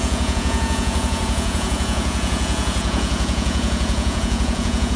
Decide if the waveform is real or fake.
fake